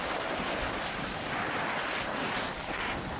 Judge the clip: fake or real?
real